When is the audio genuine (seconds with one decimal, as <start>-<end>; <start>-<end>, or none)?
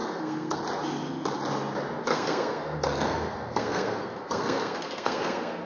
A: 0.6-2.1